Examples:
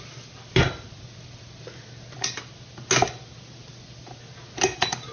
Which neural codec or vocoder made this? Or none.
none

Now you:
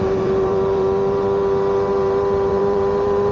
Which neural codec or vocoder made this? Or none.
vocoder, BigVGAN v2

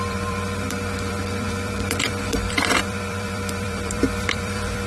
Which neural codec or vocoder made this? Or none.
vocoder, BigVGAN v2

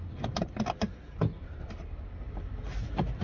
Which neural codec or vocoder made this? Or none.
vocoder, BigVGAN v2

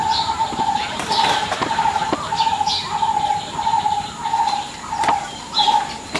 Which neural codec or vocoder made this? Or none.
vocoder, BigVGAN v2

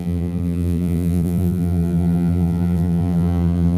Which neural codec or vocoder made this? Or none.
vocoder, BigVGAN v2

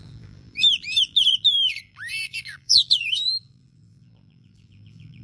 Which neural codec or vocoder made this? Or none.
vocoder, BigVGAN v2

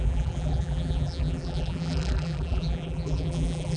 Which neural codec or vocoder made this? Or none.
vocoder, BigVGAN v2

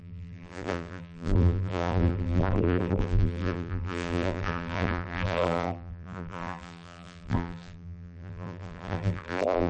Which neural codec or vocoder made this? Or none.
vocoder, BigVGAN v2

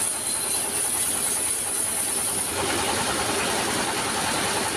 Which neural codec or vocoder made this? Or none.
none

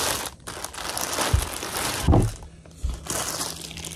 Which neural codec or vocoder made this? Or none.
none